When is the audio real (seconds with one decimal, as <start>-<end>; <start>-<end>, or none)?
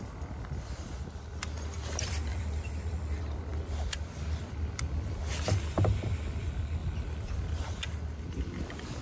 0.0-2.3; 3.0-6.8; 7.6-9.0